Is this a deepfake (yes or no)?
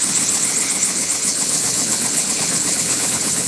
yes